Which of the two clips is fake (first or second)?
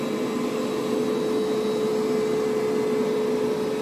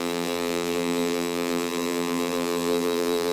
second